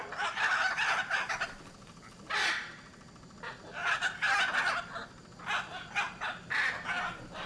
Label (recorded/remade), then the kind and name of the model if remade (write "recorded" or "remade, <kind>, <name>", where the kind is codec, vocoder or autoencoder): recorded